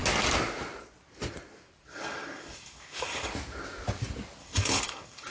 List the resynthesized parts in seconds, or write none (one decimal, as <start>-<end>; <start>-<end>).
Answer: 1.9-3.3; 4.4-5.3